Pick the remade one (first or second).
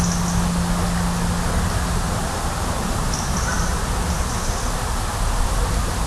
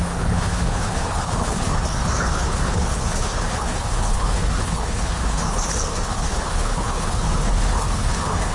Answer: second